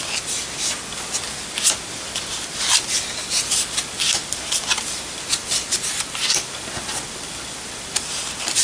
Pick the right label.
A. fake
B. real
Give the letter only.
B